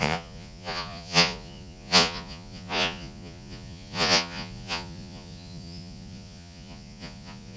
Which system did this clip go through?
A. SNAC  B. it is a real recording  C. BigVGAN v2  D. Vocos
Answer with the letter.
D